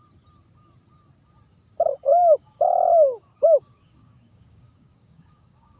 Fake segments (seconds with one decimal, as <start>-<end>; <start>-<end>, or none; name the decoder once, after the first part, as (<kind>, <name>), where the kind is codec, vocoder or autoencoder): 2.1-5.8 (codec, DAC)